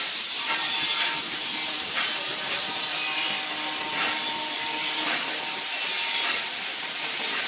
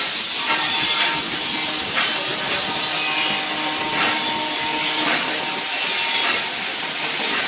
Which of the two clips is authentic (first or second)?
second